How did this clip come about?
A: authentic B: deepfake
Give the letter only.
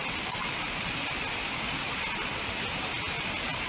A